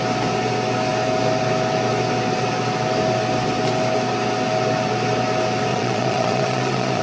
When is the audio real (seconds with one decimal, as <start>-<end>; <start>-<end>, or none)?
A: 0.0-5.7